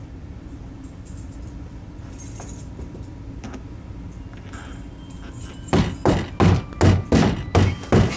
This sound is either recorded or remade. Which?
recorded